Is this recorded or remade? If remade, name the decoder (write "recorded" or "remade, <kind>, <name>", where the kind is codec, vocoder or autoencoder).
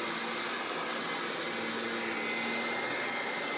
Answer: recorded